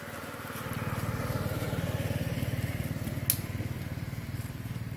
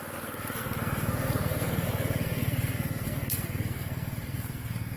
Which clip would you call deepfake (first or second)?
second